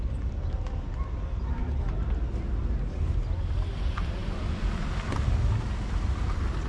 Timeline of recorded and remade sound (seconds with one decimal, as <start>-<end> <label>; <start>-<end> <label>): 0.0-6.7 recorded